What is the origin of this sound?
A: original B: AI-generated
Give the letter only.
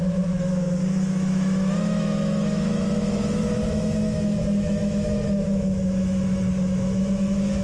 B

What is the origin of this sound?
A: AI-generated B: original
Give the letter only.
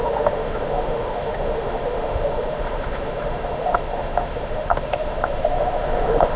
A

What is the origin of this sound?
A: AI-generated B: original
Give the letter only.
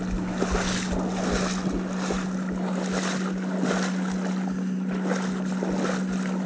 B